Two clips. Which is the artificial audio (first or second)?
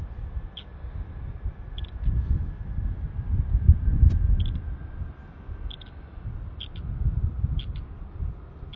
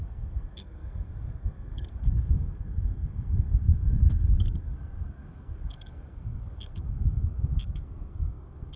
second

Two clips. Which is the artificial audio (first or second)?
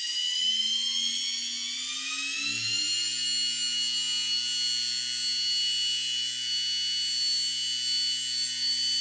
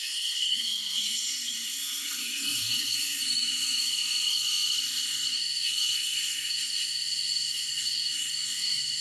second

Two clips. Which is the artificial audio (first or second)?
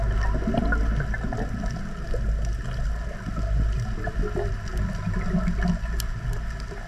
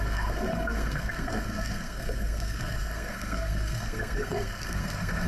second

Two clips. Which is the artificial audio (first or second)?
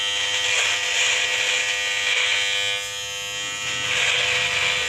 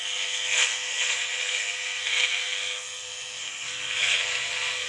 second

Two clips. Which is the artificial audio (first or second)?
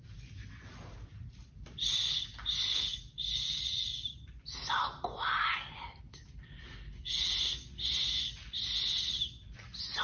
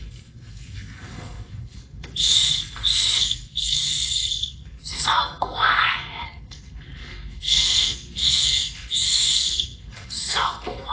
second